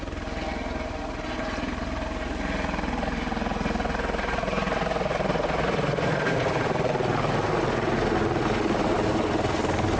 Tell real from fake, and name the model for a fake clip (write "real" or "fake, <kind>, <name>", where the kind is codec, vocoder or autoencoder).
real